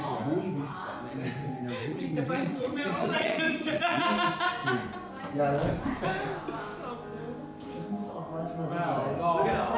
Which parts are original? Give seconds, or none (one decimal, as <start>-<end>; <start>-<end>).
0.0-1.8; 4.0-9.8